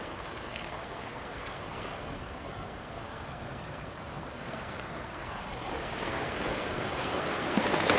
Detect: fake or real fake